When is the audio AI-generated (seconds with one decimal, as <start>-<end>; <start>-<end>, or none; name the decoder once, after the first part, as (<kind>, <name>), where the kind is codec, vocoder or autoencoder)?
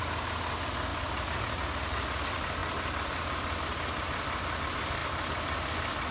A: none